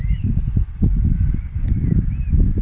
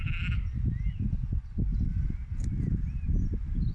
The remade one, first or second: first